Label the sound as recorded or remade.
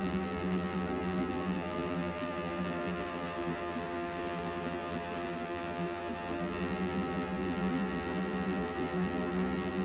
remade